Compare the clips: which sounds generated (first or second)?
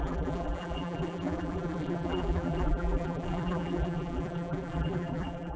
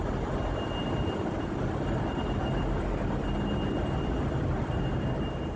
first